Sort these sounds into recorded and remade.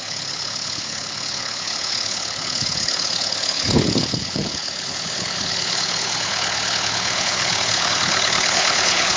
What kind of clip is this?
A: remade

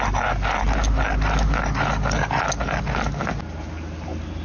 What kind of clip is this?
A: recorded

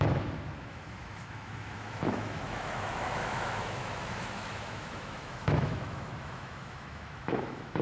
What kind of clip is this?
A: remade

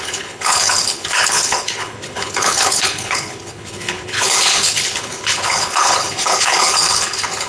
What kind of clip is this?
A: remade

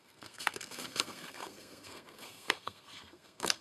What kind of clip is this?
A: remade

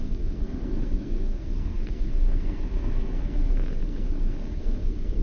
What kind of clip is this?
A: remade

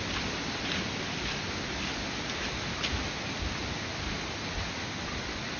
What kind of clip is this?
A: recorded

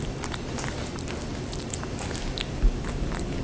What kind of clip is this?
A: recorded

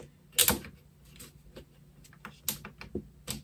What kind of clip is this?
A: recorded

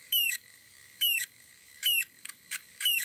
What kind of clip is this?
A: remade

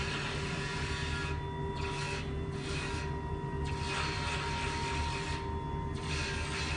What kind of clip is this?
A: recorded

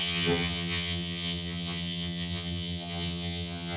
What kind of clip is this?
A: remade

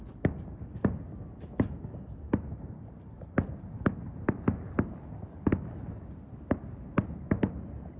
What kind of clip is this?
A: recorded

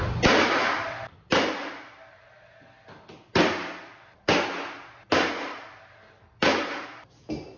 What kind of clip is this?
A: recorded